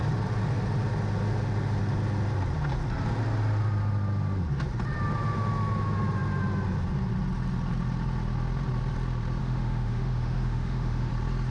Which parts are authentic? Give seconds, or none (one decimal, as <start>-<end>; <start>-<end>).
0.0-9.4; 11.1-11.5